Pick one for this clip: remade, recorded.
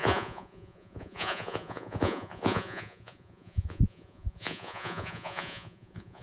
remade